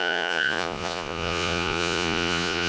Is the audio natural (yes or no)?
no